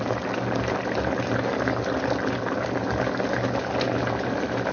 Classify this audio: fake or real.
real